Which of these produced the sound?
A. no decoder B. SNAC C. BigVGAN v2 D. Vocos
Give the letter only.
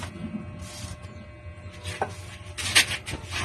A